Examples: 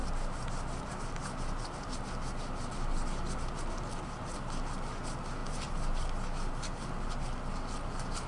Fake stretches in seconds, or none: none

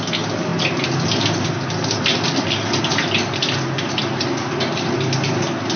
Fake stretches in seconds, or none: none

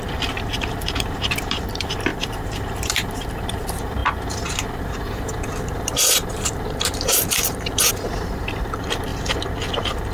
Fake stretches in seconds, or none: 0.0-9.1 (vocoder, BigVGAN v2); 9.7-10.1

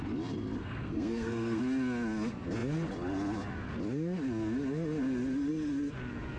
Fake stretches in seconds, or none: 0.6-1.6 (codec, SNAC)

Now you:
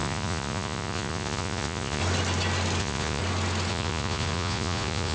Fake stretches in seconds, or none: 0.0-2.0 (vocoder, Vocos); 2.8-3.2; 3.7-5.1

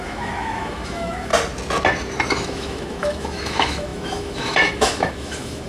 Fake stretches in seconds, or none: 0.0-1.3 (autoencoder, DAC-VAE); 2.3-5.7

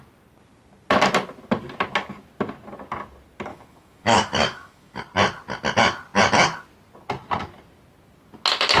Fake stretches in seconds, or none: 3.5-5.0 (autoencoder, DAC-VAE)